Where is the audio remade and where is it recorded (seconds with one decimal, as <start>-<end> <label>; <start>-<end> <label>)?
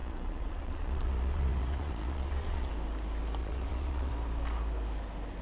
0.0-2.7 remade; 2.7-3.4 recorded; 3.4-4.1 remade; 4.1-5.4 recorded